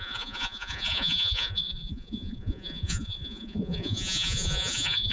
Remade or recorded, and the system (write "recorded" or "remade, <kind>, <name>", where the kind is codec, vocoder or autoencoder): remade, vocoder, Vocos